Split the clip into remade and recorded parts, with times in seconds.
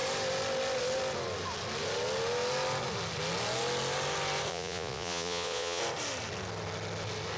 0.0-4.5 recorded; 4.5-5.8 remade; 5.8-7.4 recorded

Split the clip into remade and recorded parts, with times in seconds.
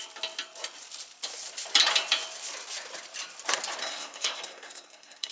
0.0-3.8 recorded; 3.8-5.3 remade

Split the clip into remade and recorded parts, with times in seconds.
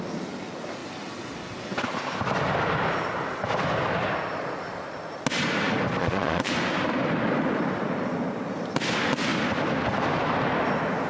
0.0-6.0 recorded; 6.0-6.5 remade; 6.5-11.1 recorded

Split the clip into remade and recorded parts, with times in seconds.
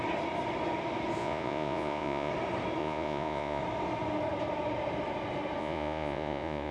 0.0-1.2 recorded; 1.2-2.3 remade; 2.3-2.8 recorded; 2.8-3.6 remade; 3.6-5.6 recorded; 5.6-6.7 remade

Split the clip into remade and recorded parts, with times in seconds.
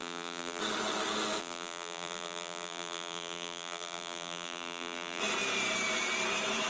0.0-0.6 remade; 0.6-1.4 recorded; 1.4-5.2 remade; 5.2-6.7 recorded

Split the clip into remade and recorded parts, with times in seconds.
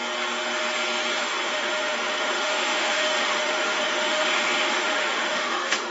0.0-1.1 recorded; 1.1-5.9 remade